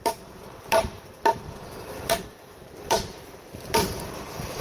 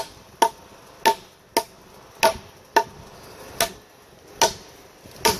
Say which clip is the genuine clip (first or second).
second